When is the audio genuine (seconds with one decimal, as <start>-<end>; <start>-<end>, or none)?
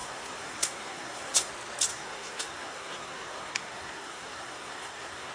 1.5-1.9